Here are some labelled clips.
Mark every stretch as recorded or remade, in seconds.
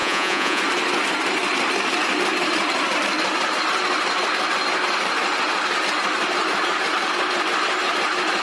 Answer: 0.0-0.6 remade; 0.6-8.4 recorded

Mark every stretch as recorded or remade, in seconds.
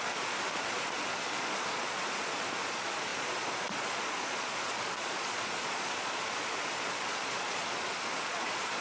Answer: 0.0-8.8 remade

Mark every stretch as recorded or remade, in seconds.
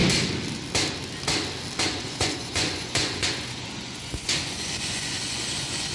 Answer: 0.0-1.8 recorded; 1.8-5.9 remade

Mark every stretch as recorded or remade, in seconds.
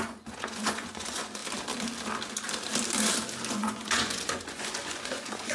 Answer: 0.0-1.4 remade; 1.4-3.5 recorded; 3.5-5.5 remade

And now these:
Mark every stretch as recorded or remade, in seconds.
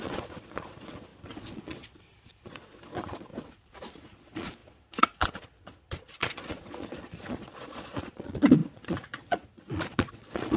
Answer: 0.0-3.3 remade; 3.3-4.1 recorded; 4.1-10.6 remade